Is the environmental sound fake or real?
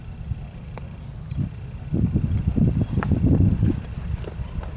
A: fake